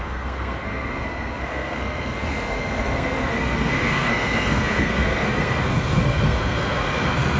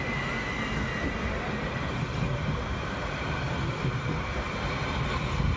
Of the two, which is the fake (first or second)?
first